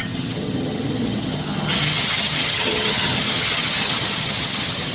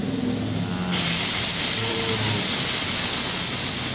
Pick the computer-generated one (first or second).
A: first